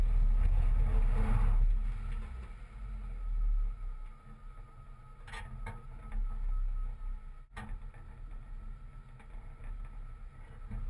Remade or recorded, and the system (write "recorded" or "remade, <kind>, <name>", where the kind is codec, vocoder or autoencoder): recorded